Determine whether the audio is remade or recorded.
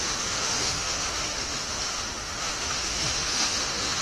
remade